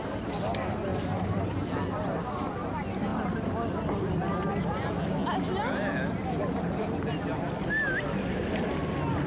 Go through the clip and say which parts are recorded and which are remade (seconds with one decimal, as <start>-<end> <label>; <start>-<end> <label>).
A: 0.0-0.9 recorded; 0.9-1.4 remade; 1.4-3.1 recorded; 3.1-4.5 remade; 4.5-9.3 recorded